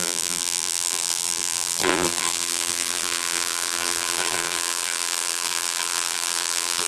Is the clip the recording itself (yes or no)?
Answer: no